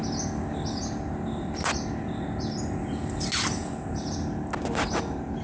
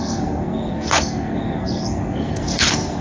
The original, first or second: first